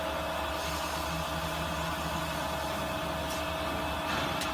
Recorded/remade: recorded